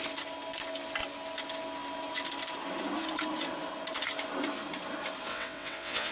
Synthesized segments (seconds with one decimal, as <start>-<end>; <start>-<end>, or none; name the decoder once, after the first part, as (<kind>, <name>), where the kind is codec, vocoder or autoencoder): 5.3-6.1 (vocoder, WaveNeXt)

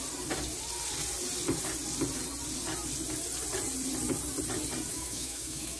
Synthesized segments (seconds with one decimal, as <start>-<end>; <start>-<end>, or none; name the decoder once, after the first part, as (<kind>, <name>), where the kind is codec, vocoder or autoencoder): 4.9-5.8 (autoencoder, DAC-VAE)

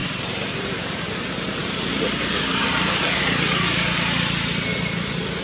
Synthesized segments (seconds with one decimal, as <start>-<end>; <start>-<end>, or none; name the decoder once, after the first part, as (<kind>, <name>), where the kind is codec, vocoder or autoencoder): 0.0-1.1 (vocoder, BigVGAN v2); 1.6-3.0

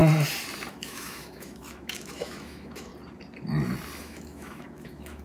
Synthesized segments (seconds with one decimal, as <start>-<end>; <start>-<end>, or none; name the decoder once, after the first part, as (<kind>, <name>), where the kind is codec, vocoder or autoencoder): 0.7-2.9 (autoencoder, DAC-VAE); 4.0-5.2

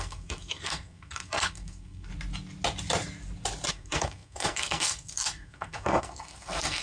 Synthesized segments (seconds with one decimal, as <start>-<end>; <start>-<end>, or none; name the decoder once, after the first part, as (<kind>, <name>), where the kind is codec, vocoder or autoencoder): 0.0-2.1 (codec, SNAC); 3.7-6.8

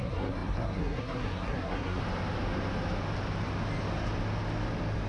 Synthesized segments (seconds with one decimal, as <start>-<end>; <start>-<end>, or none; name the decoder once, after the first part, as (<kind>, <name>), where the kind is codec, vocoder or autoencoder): 0.0-2.0 (codec, SNAC)

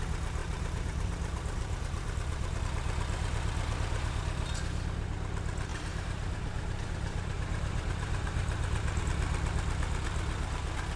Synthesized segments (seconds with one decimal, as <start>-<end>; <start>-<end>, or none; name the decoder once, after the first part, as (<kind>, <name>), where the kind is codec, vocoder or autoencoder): 0.4-2.6 (vocoder, BigVGAN v2); 5.7-9.0

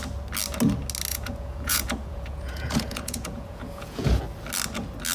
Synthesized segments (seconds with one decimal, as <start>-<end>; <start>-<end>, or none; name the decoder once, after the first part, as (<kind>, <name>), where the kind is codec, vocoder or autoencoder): 1.1-4.2 (vocoder, Vocos)